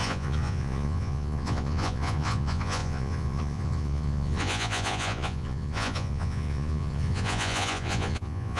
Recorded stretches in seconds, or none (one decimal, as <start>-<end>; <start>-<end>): none